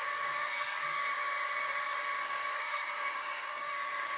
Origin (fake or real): fake